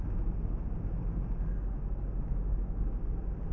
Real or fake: real